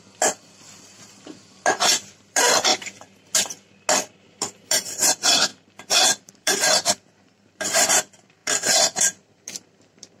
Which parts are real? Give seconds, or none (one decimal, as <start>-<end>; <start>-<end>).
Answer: 2.7-4.2; 5.5-6.2